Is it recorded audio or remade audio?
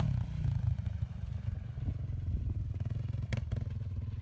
recorded